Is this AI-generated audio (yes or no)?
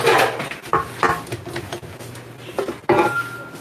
no